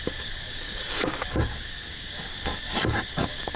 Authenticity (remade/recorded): remade